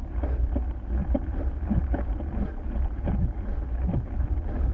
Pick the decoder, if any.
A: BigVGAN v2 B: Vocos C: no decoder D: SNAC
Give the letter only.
C